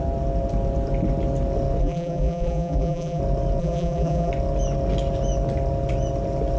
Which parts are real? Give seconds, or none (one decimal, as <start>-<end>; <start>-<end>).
0.0-1.8; 3.2-3.6; 4.3-6.6